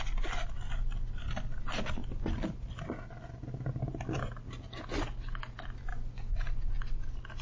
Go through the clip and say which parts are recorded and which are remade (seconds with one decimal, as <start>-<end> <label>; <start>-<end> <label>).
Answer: 0.0-5.9 recorded; 5.9-6.5 remade; 6.5-7.4 recorded